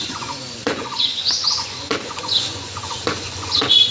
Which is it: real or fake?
fake